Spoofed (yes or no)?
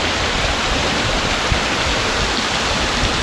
no